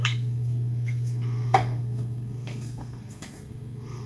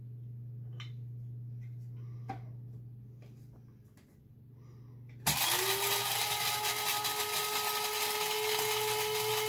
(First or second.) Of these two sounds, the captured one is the second